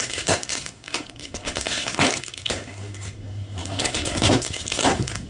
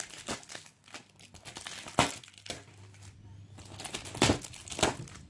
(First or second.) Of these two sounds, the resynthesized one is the first